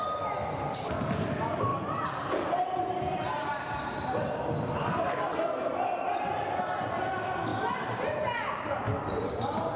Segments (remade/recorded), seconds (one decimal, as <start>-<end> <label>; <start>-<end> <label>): 0.0-1.7 recorded; 1.7-4.4 remade; 4.4-7.5 recorded; 7.5-9.8 remade